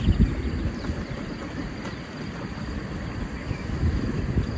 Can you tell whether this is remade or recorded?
recorded